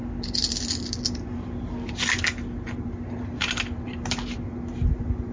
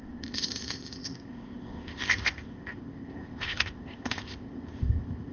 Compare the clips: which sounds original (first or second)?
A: first